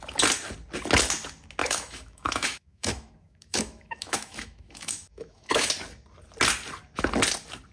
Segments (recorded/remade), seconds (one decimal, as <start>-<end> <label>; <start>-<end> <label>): 0.0-1.6 recorded; 1.6-5.7 remade; 5.7-7.7 recorded